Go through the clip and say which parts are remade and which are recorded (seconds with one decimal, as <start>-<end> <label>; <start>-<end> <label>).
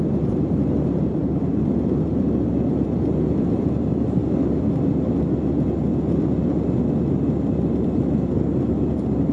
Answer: 0.0-4.2 remade; 4.2-7.8 recorded; 7.8-9.3 remade